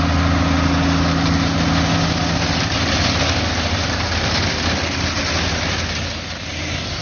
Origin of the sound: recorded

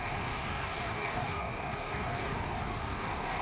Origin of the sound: remade